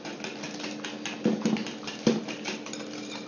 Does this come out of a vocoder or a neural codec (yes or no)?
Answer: no